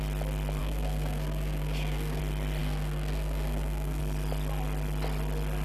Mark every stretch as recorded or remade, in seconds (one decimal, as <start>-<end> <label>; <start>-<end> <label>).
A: 0.0-0.6 recorded; 0.6-2.2 remade; 2.2-2.6 recorded; 2.6-4.0 remade; 4.0-5.6 recorded